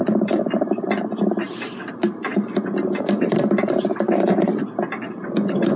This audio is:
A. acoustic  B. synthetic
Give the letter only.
B